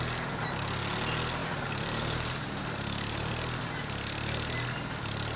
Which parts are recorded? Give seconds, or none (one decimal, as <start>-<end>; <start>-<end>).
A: 0.0-1.4; 3.3-5.4